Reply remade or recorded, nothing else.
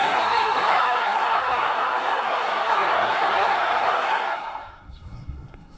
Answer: remade